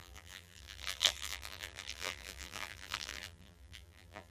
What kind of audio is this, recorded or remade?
remade